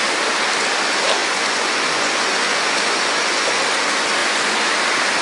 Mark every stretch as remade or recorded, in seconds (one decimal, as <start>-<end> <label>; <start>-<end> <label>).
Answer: 0.0-1.2 recorded; 1.2-3.6 remade; 3.6-4.2 recorded; 4.2-4.7 remade; 4.7-5.2 recorded